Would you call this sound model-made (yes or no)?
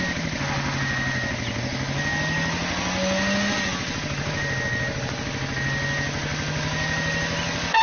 no